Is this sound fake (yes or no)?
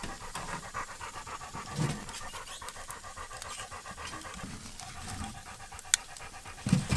no